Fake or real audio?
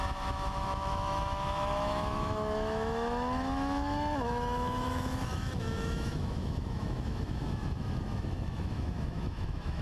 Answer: fake